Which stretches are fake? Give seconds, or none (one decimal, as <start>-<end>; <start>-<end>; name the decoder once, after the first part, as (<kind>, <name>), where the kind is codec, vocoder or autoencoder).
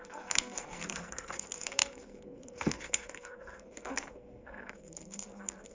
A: 0.0-5.7 (codec, SNAC)